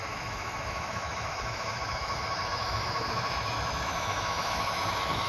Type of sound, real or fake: fake